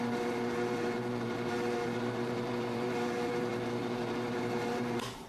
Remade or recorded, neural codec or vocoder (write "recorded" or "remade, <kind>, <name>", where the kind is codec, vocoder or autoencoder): remade, vocoder, BigVGAN v2